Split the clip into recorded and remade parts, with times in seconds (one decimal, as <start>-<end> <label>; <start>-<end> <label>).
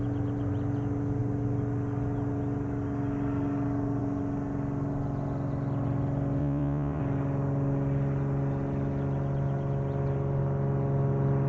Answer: 0.0-6.4 recorded; 6.4-7.0 remade; 7.0-11.5 recorded